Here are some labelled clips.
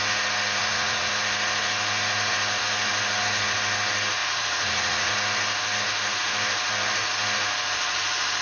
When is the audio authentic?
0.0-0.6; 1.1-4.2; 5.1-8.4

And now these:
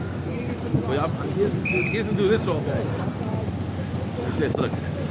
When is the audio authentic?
0.0-5.1

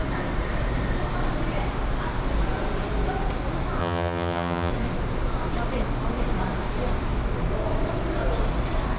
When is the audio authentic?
0.0-3.8; 4.7-9.0